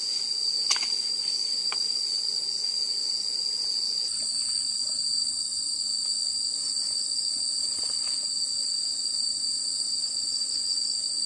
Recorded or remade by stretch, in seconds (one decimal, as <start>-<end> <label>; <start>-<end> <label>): 0.0-11.3 recorded